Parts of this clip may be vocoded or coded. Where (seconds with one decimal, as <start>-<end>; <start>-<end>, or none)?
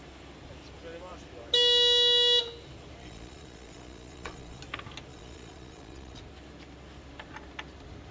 3.0-4.6; 5.1-6.2